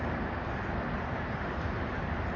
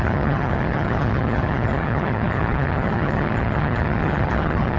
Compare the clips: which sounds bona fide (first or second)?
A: first